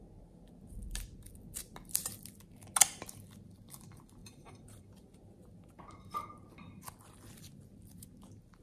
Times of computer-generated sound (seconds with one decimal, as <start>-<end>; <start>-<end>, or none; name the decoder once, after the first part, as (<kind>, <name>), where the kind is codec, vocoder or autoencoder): none